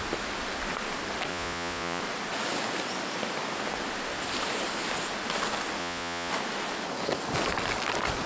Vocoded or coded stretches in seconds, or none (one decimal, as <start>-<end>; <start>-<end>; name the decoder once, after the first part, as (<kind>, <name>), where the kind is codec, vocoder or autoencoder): 1.3-2.0 (vocoder, Vocos); 5.8-6.3